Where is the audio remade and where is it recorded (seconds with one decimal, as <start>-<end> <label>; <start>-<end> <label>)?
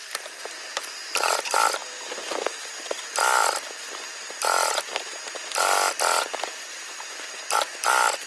0.0-8.3 recorded